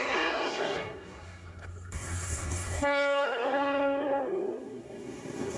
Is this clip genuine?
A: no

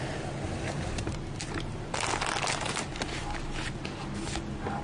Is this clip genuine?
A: yes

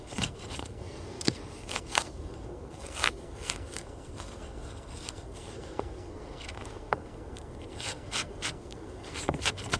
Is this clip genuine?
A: no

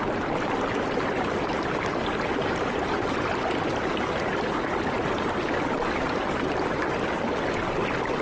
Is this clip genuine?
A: yes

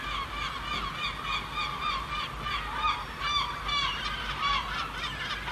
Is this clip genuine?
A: yes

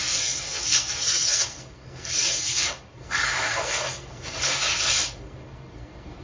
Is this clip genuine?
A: no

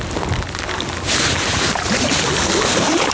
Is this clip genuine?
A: yes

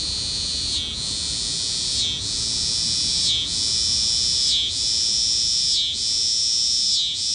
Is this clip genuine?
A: yes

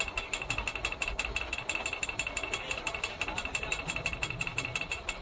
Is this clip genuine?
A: yes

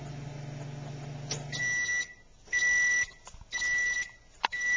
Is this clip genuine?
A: yes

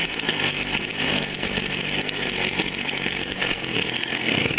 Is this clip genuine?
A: no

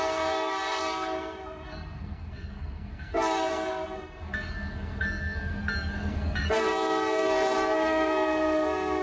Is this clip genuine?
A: no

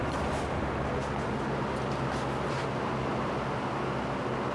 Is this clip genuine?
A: yes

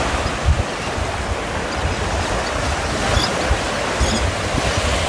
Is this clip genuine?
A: yes